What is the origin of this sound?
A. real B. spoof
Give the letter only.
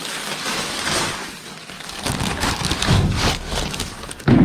B